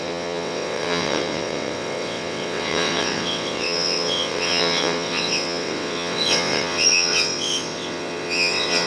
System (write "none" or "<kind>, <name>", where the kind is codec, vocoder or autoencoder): vocoder, WaveNeXt